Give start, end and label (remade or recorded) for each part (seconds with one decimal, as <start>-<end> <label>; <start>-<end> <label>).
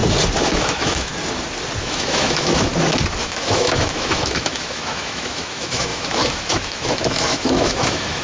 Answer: 0.0-0.5 recorded; 0.5-1.1 remade; 1.1-1.8 recorded; 1.8-2.7 remade; 2.7-3.2 recorded; 3.2-8.2 remade